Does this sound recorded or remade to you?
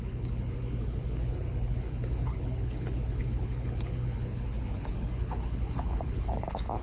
remade